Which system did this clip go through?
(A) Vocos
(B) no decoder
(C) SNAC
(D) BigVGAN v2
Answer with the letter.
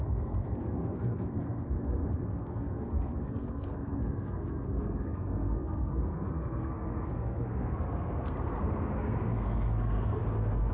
C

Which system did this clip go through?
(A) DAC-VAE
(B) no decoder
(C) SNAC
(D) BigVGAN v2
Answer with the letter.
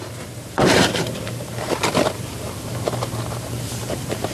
D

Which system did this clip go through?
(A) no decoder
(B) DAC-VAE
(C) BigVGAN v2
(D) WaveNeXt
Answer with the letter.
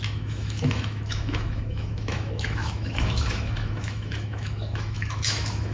B